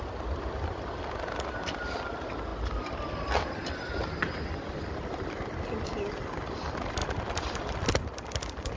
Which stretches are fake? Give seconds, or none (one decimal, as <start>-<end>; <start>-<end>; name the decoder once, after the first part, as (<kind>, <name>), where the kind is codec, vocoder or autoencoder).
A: none